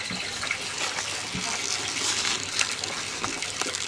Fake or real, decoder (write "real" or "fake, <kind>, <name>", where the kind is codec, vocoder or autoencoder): real